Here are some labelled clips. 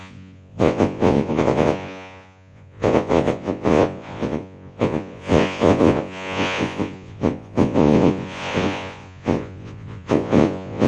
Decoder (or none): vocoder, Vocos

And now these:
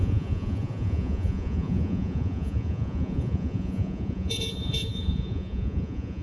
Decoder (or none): vocoder, Vocos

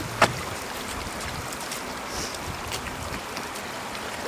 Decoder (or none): none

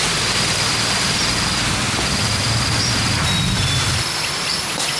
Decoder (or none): none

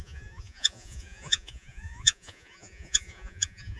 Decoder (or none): vocoder, Vocos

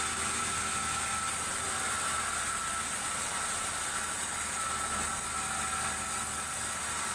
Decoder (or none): none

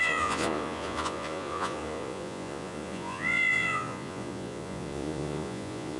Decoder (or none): vocoder, Vocos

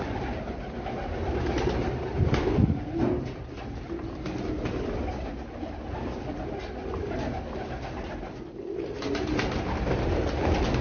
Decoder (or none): none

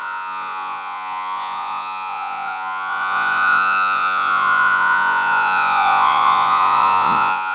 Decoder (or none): vocoder, Vocos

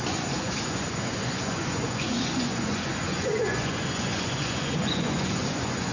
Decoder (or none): vocoder, Vocos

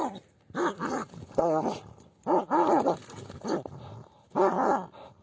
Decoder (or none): none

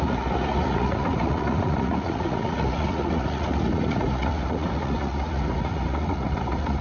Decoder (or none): vocoder, Vocos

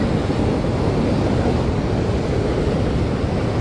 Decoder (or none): none